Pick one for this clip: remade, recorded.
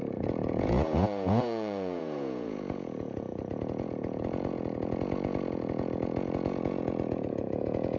remade